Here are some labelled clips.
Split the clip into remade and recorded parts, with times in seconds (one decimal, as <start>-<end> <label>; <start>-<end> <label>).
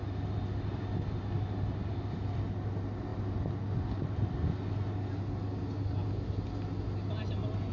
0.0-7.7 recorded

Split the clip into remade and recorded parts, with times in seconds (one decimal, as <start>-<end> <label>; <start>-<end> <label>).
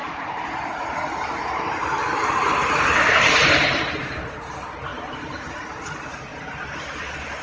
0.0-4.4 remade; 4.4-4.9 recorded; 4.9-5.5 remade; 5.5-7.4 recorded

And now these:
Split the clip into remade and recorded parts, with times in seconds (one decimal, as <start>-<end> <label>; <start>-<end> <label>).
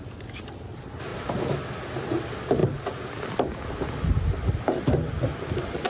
0.0-1.1 recorded; 1.1-1.6 remade; 1.6-2.6 recorded; 2.6-3.3 remade; 3.3-5.9 recorded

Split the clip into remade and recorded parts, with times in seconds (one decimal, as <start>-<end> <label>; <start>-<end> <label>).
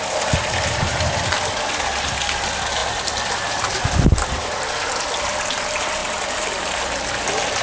0.0-7.6 recorded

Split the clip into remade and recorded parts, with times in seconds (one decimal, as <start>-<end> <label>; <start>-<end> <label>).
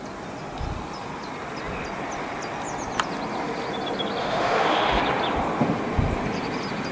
0.0-4.2 recorded; 4.2-5.0 remade; 5.0-6.9 recorded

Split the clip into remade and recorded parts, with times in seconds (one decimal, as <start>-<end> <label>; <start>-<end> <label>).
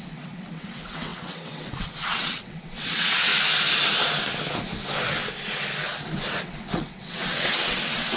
0.0-3.3 remade; 3.3-6.4 recorded; 6.4-8.2 remade